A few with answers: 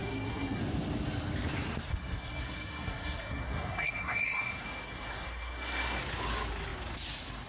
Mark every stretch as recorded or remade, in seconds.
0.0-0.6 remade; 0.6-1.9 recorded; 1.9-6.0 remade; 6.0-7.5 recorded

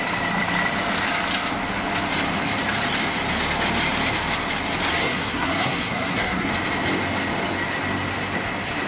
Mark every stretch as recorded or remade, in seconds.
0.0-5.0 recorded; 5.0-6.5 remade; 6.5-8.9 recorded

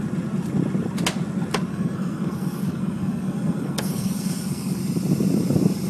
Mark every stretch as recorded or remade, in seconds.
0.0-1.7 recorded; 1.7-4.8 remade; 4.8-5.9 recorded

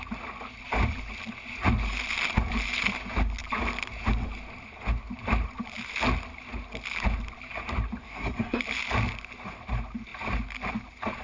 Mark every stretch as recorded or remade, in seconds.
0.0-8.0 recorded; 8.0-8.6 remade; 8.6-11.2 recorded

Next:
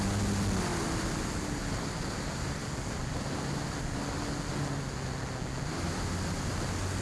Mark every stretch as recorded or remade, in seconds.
0.0-7.0 recorded

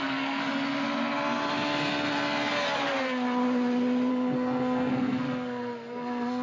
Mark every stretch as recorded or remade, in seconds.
0.0-0.4 remade; 0.4-4.1 recorded; 4.1-6.4 remade

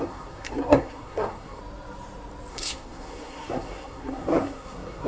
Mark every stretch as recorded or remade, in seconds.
0.0-1.6 remade; 1.6-2.5 recorded; 2.5-5.1 remade